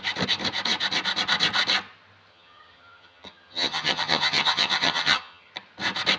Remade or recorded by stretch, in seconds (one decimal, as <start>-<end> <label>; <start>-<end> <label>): 0.0-2.3 recorded; 2.3-5.5 remade; 5.5-6.2 recorded